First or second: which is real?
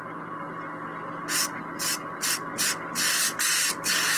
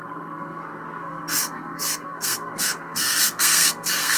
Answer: first